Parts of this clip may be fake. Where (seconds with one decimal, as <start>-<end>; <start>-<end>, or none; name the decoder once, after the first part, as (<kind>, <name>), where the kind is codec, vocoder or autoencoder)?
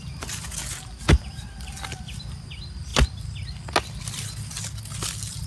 none